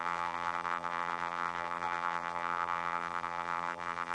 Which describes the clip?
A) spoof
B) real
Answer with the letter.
A